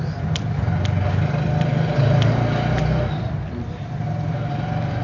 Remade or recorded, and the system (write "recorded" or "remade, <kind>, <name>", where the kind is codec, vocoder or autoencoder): recorded